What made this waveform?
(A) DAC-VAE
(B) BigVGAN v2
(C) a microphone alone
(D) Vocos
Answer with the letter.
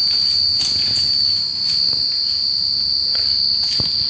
C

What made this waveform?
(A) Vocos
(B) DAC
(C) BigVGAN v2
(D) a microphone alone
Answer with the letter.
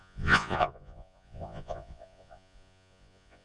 A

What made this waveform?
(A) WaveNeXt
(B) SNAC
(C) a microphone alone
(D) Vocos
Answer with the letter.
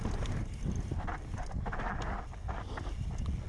C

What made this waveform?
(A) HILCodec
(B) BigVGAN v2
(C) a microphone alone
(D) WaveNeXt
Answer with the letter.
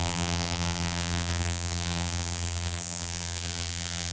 B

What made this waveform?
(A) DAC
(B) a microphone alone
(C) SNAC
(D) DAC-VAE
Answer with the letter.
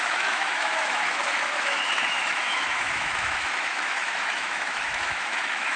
D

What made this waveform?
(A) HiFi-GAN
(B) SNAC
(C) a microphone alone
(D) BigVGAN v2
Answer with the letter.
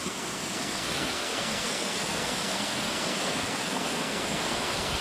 B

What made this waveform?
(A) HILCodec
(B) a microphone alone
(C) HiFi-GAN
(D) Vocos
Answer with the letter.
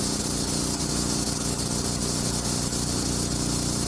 B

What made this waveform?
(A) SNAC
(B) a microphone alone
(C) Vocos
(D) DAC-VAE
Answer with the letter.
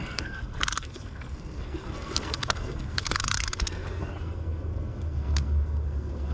A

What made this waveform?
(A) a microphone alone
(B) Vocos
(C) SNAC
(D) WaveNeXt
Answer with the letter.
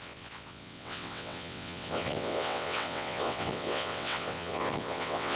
D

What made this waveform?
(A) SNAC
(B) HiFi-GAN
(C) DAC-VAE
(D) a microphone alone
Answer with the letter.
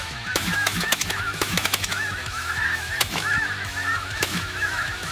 C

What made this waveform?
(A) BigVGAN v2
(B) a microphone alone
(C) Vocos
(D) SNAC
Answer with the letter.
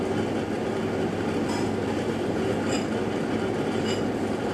B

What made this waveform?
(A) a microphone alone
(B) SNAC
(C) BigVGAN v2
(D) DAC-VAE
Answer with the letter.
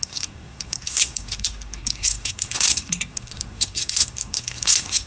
B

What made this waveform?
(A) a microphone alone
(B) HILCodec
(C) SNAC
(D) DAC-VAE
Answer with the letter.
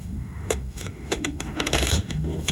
D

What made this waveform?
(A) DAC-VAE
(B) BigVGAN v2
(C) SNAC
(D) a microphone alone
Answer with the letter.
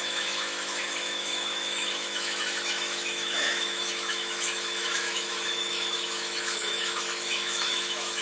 A